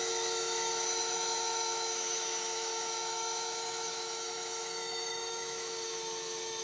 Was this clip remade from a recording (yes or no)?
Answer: yes